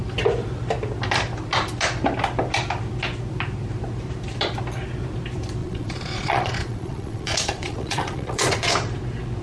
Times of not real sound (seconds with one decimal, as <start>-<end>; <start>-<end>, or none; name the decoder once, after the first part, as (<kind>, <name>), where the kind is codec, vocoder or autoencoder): 5.6-8.7 (vocoder, Vocos)